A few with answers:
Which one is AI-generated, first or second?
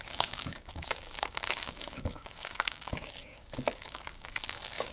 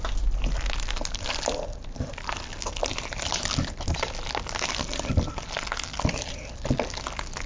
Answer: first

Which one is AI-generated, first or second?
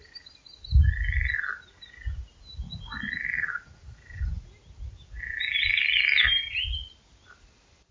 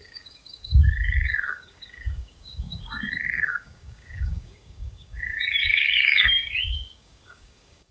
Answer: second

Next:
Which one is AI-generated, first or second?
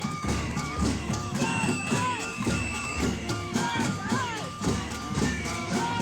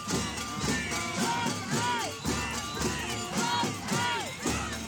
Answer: first